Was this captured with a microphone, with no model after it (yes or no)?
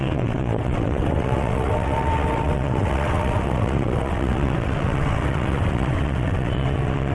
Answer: no